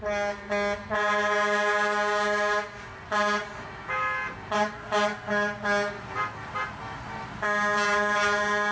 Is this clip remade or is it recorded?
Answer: recorded